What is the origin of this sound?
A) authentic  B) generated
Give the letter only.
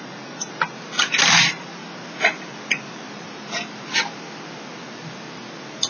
B